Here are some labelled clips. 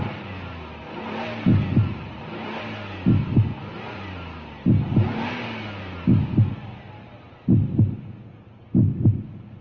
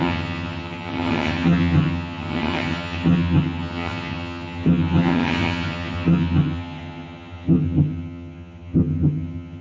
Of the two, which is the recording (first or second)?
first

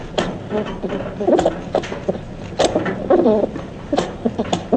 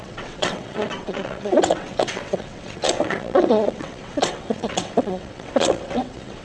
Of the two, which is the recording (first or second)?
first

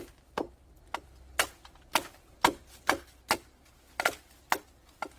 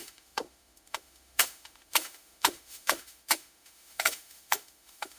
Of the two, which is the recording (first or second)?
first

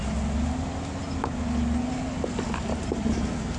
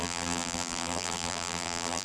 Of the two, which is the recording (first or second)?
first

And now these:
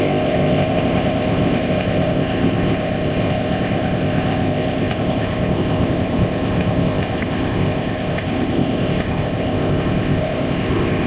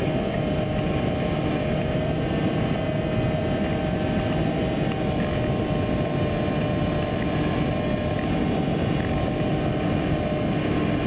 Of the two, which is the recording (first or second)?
second